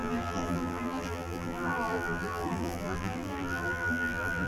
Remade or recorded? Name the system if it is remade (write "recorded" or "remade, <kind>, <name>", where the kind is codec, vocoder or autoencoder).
remade, vocoder, BigVGAN v2